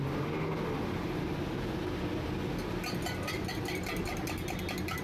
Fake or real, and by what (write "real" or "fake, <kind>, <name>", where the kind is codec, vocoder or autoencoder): real